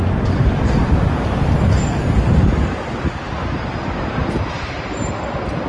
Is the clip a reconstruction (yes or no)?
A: no